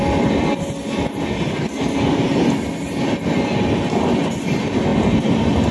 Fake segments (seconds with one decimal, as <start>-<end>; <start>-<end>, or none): none